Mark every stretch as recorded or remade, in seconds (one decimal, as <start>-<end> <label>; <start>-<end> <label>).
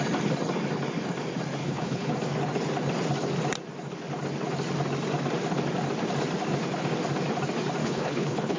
0.0-1.6 recorded; 1.6-2.1 remade; 2.1-7.8 recorded; 7.8-8.6 remade